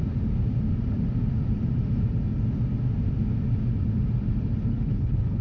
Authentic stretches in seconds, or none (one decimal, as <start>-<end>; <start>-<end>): 0.0-4.7